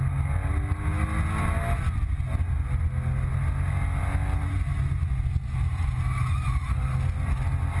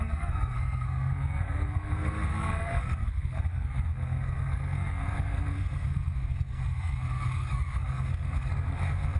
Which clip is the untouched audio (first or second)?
first